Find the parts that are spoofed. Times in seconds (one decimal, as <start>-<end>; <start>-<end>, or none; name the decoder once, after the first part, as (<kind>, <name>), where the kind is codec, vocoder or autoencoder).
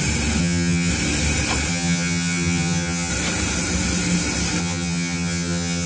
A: 0.4-0.9 (vocoder, HiFi-GAN); 1.7-3.1; 4.6-5.9